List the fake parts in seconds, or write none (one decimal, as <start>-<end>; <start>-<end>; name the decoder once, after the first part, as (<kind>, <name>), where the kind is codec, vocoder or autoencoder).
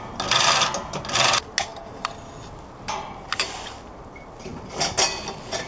none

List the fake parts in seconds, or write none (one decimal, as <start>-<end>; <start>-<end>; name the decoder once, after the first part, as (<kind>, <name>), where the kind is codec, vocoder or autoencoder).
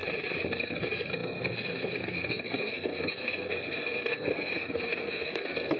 0.5-5.8 (codec, SNAC)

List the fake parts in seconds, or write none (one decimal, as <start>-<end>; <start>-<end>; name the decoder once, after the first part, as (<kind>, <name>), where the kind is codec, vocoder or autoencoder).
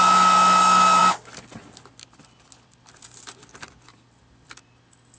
none